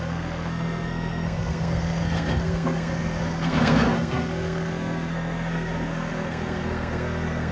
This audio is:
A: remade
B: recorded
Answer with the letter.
A